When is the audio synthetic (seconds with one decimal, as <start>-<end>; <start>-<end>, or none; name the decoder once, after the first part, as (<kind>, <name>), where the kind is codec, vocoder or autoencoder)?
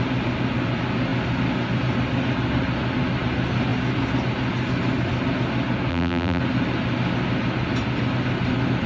5.9-6.4 (vocoder, BigVGAN v2)